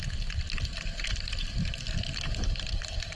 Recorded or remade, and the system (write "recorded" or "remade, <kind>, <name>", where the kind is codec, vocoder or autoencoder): remade, vocoder, BigVGAN v2